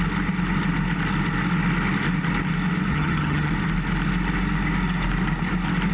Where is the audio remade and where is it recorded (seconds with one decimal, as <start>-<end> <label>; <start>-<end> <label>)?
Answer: 0.0-2.9 recorded; 2.9-3.5 remade; 3.5-5.9 recorded